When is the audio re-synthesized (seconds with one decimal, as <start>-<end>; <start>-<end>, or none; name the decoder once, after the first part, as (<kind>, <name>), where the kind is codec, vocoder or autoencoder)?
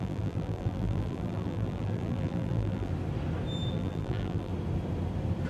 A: 0.0-2.9 (vocoder, BigVGAN v2); 3.7-4.5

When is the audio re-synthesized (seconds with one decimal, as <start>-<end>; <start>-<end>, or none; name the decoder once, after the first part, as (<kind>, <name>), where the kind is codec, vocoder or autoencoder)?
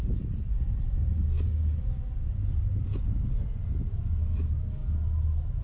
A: none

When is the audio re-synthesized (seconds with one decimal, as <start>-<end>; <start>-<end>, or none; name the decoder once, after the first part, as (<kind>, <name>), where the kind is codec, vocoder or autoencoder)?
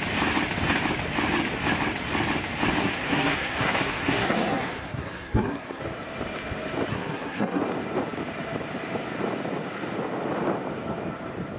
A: 2.8-5.8 (codec, SNAC); 6.9-7.6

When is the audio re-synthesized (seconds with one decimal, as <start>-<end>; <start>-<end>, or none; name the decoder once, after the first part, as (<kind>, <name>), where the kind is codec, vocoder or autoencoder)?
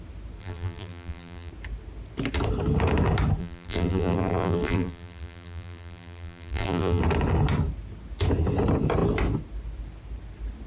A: 0.4-1.5 (vocoder, BigVGAN v2); 3.4-7.0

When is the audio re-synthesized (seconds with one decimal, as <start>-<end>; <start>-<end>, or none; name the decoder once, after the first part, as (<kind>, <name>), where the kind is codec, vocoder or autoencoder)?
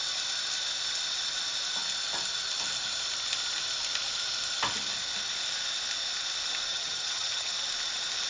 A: 6.7-7.5 (vocoder, HiFi-GAN)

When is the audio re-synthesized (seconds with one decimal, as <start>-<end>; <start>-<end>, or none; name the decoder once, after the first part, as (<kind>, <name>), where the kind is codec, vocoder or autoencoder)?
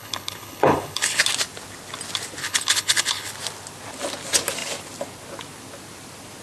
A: 0.0-1.2 (codec, HILCodec); 2.4-3.3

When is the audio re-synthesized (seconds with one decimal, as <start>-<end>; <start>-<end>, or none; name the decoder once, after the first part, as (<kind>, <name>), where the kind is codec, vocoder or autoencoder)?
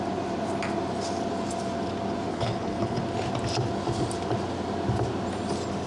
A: 2.3-3.0 (codec, HILCodec)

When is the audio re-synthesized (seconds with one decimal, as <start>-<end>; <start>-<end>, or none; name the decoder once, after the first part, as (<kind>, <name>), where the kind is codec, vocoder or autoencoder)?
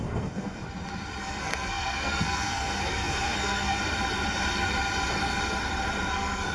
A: 0.0-0.6 (codec, SNAC); 1.2-3.8; 6.1-6.5